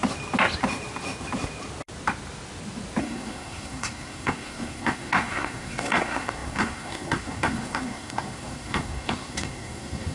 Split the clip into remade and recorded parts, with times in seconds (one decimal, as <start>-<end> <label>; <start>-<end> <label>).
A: 0.0-3.0 recorded; 3.0-10.1 remade